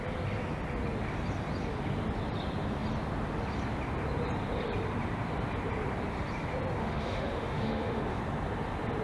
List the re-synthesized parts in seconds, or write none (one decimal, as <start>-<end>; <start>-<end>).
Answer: 6.8-8.2